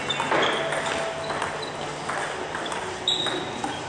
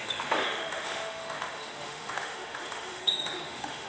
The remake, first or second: second